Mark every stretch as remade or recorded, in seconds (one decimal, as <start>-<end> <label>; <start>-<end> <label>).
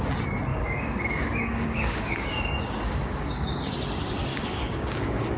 0.0-0.5 recorded; 0.5-3.7 remade; 3.7-4.3 recorded; 4.3-5.4 remade